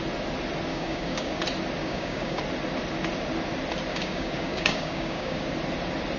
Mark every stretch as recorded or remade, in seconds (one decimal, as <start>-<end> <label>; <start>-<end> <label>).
0.0-0.7 recorded; 0.7-1.4 remade; 1.4-1.8 recorded; 1.8-2.4 remade; 2.4-3.9 recorded; 3.9-5.4 remade; 5.4-6.2 recorded